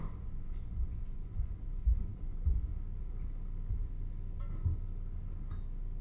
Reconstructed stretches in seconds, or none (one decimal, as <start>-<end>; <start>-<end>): 0.0-2.7